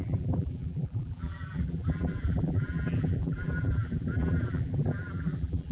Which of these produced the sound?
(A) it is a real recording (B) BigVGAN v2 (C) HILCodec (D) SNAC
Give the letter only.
B